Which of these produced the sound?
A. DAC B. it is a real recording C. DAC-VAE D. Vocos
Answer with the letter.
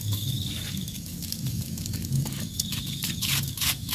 A